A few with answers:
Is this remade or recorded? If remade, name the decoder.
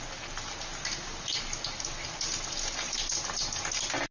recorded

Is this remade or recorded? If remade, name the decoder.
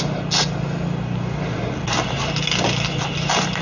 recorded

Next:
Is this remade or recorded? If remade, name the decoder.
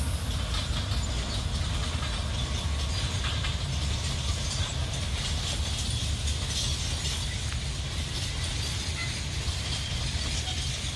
recorded